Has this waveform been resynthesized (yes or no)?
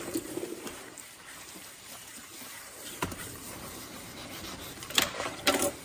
yes